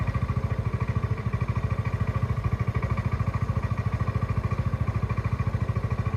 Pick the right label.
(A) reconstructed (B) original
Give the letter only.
B